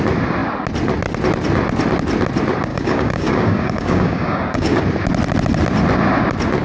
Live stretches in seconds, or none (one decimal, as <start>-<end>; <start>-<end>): 0.0-2.7; 4.8-6.6

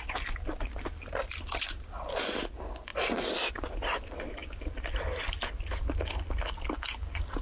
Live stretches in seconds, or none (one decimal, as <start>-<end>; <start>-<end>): 0.0-7.4

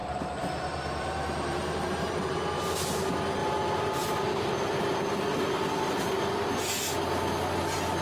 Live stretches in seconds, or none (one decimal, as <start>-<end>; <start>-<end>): 2.1-3.4; 4.5-5.3; 6.3-8.0

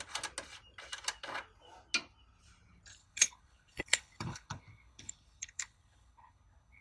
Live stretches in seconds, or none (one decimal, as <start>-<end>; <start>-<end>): 0.0-3.0

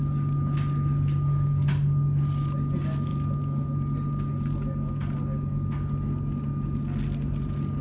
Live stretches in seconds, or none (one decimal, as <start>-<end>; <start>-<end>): 0.0-7.8

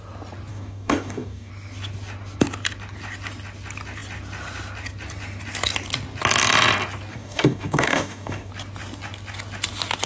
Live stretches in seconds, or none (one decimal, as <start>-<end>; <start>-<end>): 0.0-0.5; 1.5-7.1; 8.5-10.1

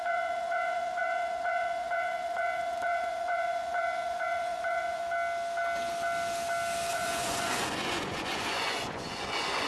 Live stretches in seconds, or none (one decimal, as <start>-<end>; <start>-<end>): 5.0-6.9